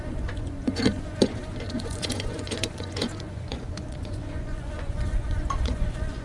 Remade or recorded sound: remade